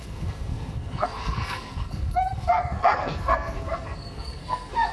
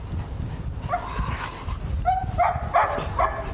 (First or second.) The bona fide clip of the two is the second